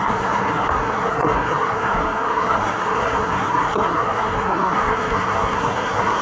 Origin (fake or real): fake